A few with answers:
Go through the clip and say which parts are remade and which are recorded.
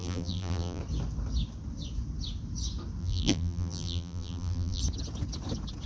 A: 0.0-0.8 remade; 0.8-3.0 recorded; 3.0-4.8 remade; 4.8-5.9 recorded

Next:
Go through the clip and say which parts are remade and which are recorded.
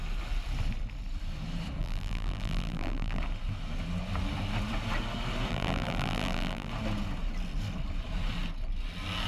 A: 0.0-1.8 recorded; 1.8-3.2 remade; 3.2-5.5 recorded; 5.5-6.7 remade; 6.7-9.3 recorded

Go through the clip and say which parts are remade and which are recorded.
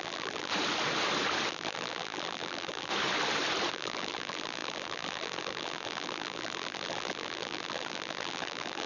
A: 0.0-0.5 remade; 0.5-1.5 recorded; 1.5-2.9 remade; 2.9-3.7 recorded; 3.7-8.9 remade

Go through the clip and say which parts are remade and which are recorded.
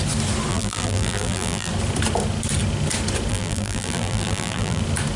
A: 0.0-0.5 recorded; 0.5-1.7 remade; 1.7-3.3 recorded; 3.3-4.8 remade; 4.8-5.2 recorded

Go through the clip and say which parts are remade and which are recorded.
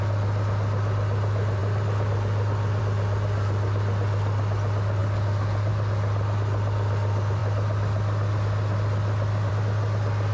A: 0.0-10.3 recorded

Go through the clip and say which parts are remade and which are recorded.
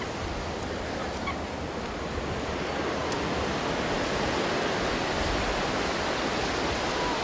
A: 0.0-7.2 recorded